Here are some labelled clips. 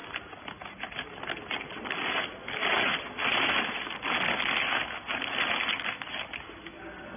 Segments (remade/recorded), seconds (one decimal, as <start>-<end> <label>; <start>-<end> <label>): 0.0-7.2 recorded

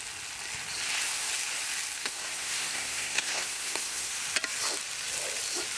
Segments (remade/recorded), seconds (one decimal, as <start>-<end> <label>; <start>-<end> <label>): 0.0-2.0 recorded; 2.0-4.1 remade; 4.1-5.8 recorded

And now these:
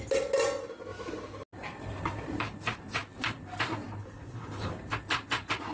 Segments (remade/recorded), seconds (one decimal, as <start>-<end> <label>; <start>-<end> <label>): 0.0-4.0 recorded; 4.0-4.7 remade; 4.7-5.7 recorded